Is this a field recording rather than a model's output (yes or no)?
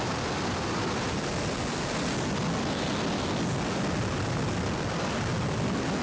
yes